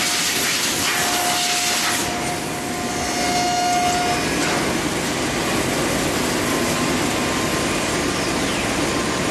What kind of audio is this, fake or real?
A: real